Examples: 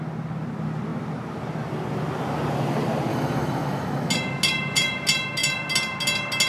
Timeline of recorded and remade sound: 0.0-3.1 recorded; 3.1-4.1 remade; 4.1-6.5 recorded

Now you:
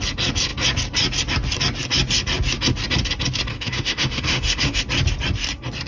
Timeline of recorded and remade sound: 0.0-3.5 recorded; 3.5-4.8 remade; 4.8-5.9 recorded

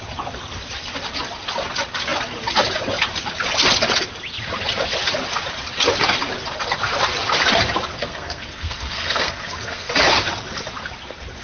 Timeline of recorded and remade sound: 0.0-8.0 recorded; 8.0-9.9 remade; 9.9-11.4 recorded

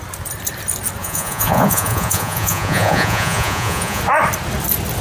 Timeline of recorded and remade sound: 0.0-1.0 recorded; 1.0-4.0 remade; 4.0-5.0 recorded